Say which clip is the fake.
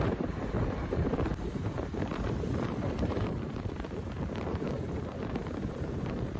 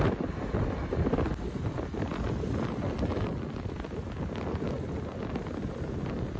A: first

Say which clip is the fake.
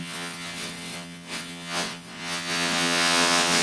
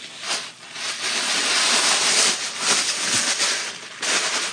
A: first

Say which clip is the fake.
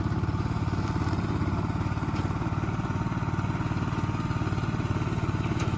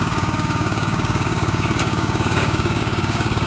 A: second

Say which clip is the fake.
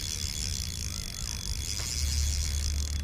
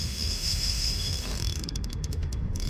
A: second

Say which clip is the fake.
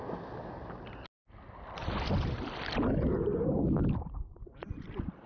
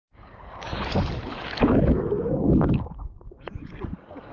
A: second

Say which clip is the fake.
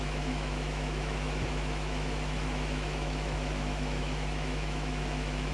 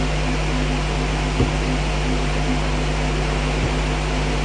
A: first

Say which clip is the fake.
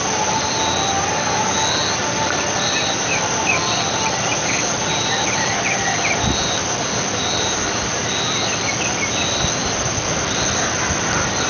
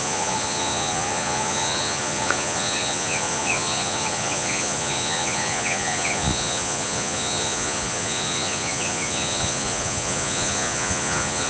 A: second